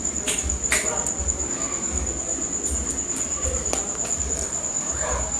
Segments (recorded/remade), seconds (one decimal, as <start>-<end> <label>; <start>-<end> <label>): 0.0-0.6 remade; 0.6-1.2 recorded; 1.2-2.3 remade; 2.3-4.2 recorded; 4.2-5.4 remade